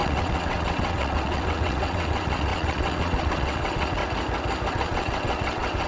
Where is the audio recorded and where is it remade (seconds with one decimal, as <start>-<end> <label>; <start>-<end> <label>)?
0.0-4.0 remade; 4.0-4.7 recorded; 4.7-5.9 remade